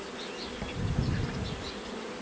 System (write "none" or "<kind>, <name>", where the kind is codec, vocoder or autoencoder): none